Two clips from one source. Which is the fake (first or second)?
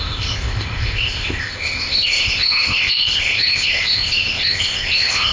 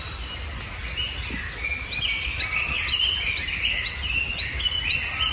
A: first